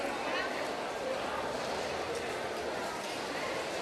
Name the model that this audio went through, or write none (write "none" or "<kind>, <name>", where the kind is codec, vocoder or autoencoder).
none